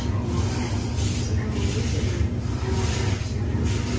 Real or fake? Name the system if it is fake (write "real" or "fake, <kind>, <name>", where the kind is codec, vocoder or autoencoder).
real